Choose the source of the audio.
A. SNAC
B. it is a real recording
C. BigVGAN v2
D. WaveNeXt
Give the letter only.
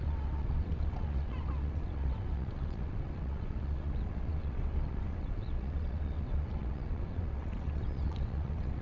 D